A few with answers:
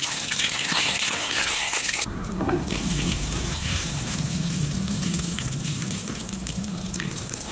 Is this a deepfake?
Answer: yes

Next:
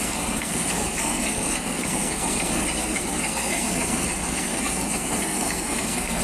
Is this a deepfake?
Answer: yes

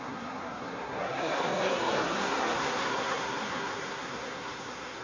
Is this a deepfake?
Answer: yes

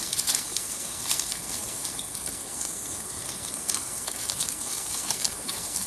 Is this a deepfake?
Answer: yes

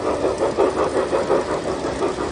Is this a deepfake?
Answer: no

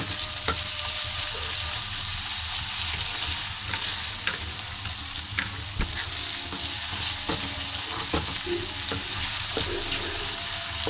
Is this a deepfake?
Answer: no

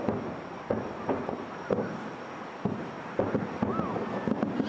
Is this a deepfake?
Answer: no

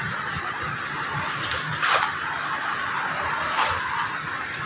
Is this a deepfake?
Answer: no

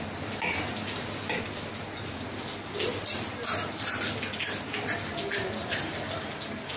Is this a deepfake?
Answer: no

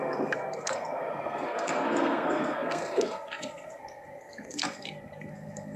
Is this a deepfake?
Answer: yes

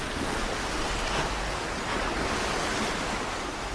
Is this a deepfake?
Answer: no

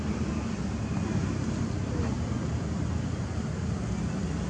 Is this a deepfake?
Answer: no